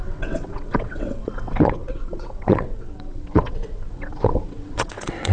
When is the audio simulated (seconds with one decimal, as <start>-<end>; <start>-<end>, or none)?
0.0-5.3